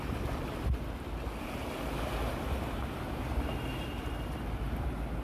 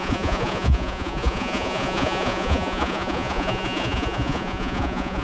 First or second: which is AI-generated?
second